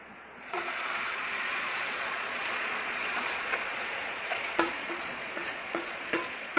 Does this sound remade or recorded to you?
remade